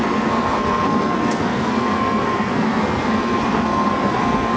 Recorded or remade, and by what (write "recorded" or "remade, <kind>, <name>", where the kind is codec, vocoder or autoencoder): remade, codec, SNAC